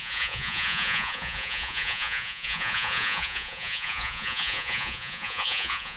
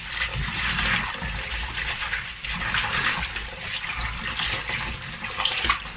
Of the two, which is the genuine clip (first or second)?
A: second